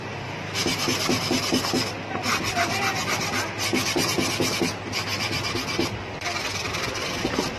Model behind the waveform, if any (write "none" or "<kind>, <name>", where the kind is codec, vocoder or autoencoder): vocoder, BigVGAN v2